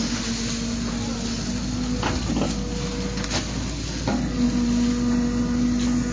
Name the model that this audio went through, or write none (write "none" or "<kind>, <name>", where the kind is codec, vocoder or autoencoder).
none